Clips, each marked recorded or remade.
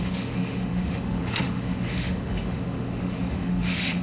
remade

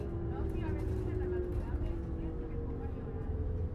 recorded